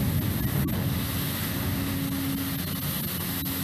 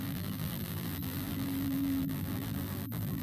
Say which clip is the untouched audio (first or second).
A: first